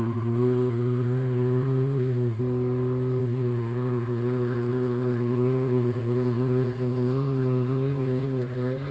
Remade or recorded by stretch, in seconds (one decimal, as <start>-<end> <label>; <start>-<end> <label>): 0.0-2.4 remade; 2.4-3.2 recorded; 3.2-8.9 remade